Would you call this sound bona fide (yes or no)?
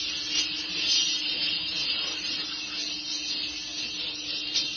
yes